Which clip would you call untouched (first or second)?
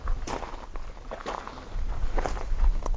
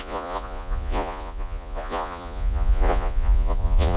first